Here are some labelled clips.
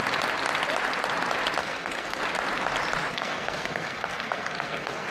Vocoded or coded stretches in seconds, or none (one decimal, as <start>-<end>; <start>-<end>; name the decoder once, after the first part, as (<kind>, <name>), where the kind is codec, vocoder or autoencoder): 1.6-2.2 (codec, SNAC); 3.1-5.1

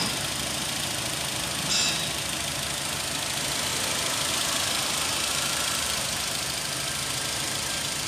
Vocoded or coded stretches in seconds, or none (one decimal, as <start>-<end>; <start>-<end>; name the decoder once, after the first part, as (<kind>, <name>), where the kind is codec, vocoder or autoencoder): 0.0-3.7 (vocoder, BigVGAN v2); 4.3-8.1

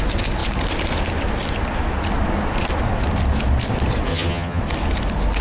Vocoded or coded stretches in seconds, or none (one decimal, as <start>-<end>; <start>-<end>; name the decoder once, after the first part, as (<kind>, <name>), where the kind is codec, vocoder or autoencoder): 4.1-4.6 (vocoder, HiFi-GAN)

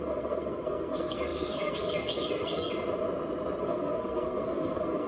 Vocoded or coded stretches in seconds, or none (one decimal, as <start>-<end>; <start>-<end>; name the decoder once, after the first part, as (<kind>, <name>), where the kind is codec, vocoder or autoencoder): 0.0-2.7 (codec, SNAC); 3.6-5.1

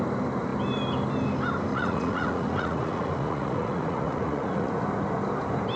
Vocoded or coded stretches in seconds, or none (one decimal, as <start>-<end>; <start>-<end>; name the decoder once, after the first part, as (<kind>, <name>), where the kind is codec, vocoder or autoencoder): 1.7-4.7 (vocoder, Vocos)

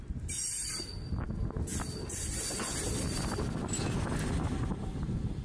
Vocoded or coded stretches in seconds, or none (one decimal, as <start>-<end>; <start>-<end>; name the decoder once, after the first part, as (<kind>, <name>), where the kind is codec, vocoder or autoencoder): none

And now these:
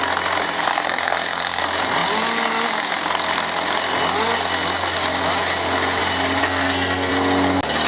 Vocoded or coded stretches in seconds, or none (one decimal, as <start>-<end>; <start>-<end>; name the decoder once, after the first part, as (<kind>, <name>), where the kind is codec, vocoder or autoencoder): 0.7-1.6 (codec, SNAC); 6.4-7.1

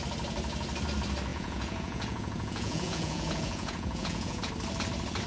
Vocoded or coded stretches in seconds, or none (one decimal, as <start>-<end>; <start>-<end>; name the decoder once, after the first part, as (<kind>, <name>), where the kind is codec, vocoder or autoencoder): 1.3-4.5 (vocoder, Vocos)